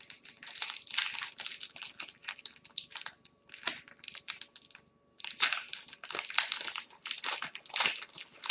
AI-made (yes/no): no